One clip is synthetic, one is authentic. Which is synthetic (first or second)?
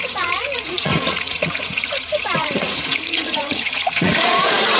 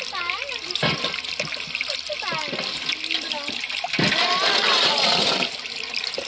first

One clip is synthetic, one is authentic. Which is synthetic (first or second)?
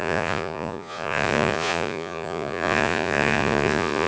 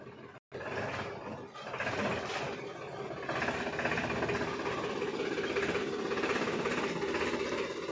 first